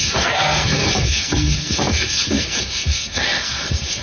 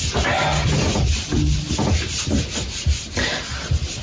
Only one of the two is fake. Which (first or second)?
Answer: first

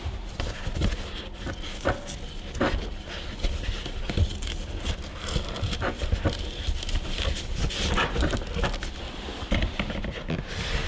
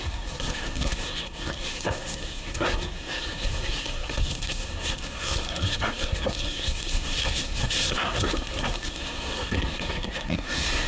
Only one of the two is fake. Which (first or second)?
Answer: second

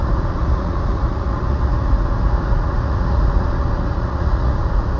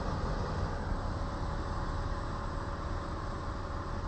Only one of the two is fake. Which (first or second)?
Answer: first